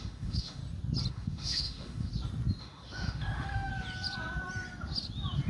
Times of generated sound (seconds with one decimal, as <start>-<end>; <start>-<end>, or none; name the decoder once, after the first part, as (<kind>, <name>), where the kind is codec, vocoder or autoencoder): 0.0-0.6 (autoencoder, DAC-VAE); 1.1-2.1; 2.6-3.7